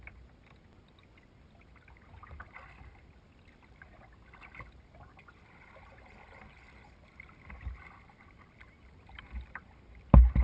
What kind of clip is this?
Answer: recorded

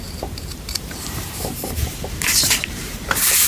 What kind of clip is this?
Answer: remade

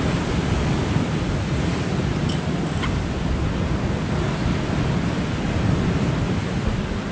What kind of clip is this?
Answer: recorded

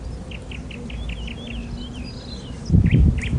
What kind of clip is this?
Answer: recorded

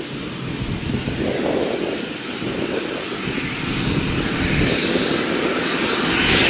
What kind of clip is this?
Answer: remade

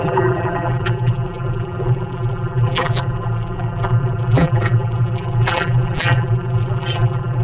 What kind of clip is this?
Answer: remade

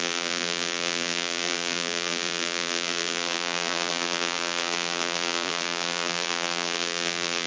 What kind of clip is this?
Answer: remade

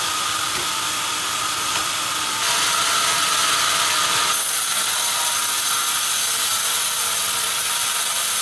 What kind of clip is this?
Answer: recorded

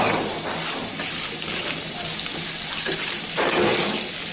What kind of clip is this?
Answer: recorded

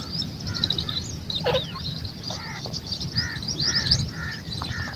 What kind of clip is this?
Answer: remade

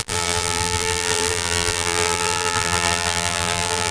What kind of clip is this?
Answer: remade